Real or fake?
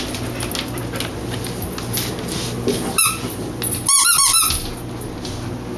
real